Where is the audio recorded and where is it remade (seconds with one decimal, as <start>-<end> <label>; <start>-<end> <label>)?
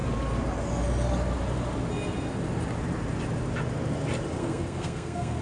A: 0.0-4.4 recorded; 4.4-5.4 remade